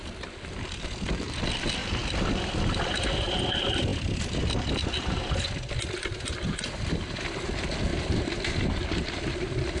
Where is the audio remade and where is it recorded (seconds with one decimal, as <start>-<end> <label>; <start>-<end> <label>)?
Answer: 0.0-9.8 recorded